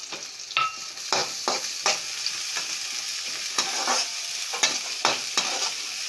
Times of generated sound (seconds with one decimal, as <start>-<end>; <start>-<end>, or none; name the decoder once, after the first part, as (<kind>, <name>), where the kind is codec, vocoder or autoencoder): 0.0-0.6 (vocoder, BigVGAN v2); 5.2-6.1